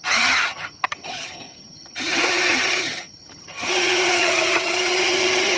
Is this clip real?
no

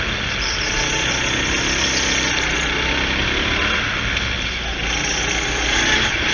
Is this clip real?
yes